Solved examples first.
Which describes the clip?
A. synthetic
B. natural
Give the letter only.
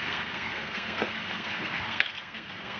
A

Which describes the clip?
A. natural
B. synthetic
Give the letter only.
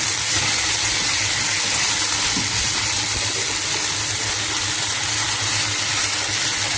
A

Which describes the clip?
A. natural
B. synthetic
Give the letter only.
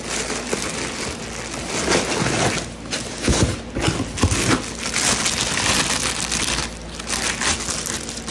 A